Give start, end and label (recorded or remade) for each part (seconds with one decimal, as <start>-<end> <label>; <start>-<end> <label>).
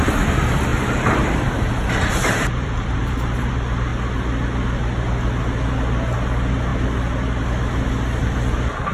0.0-0.7 recorded; 0.7-3.5 remade; 3.5-8.9 recorded